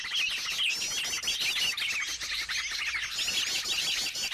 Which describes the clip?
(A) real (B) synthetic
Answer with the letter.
A